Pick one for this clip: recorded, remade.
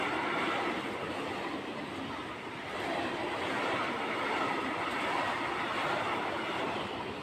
recorded